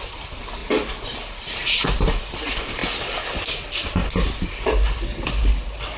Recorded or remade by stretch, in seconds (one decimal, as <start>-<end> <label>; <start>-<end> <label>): 0.0-6.0 recorded